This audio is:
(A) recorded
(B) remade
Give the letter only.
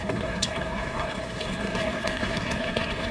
B